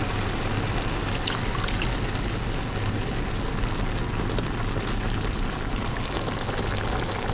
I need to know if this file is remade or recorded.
recorded